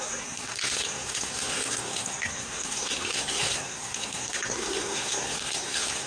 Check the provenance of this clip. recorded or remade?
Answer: remade